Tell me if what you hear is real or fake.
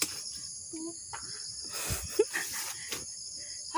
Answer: real